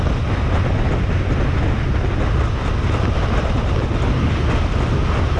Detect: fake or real real